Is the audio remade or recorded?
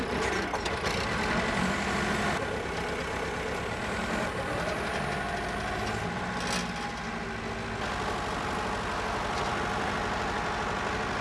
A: recorded